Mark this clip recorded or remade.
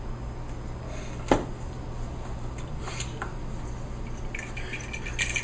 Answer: recorded